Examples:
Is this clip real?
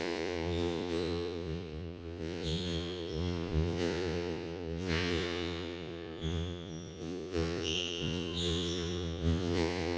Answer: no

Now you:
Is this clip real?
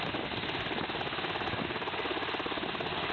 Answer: yes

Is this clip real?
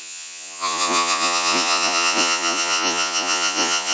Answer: no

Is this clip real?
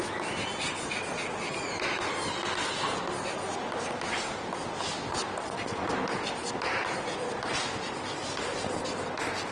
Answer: yes